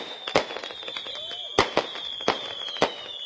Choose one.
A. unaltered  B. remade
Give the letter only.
A